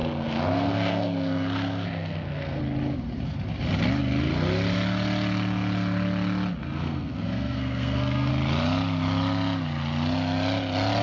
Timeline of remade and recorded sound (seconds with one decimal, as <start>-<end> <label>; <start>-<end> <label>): 0.0-2.6 remade; 2.6-6.6 recorded; 6.6-8.3 remade; 8.3-11.0 recorded